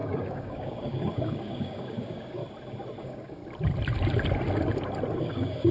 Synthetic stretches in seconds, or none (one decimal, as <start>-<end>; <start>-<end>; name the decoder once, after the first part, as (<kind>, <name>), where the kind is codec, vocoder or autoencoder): 0.0-2.4 (codec, DAC); 3.0-3.4; 5.2-5.7